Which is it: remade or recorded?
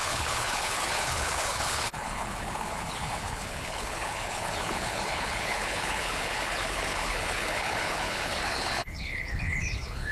remade